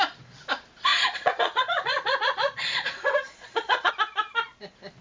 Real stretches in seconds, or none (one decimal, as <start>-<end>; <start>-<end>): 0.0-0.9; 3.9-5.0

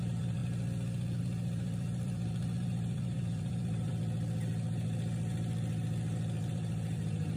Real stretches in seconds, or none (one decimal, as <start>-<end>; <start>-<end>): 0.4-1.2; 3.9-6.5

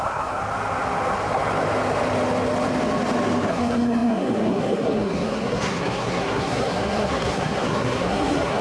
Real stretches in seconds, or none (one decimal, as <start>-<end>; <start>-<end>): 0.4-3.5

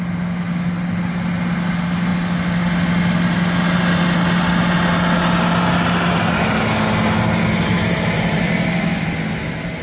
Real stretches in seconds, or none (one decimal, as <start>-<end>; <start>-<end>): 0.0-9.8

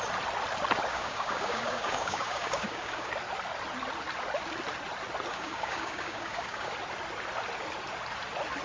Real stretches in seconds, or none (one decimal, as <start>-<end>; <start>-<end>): 0.0-0.9; 3.1-5.3; 6.7-8.6

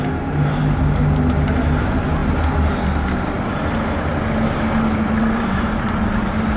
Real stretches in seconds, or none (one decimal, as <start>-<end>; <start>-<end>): 0.6-1.8; 2.2-5.2